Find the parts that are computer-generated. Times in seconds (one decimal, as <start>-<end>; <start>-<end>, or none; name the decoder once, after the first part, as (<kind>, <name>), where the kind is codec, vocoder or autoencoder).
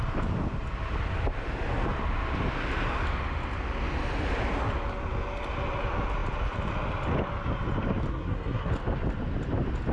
8.1-8.7 (codec, SNAC)